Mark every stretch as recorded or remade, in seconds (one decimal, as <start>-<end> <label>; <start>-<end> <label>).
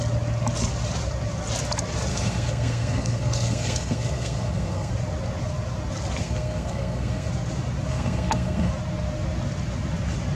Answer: 0.0-2.1 recorded; 2.1-4.9 remade; 4.9-6.2 recorded; 6.2-7.3 remade; 7.3-7.9 recorded; 7.9-8.7 remade; 8.7-10.4 recorded